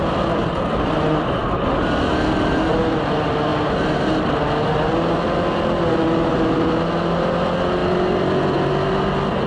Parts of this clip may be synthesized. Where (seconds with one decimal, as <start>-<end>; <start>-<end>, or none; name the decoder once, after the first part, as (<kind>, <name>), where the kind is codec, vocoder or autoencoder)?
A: none